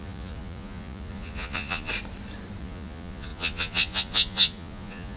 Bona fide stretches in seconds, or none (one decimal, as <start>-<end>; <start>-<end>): 1.9-2.6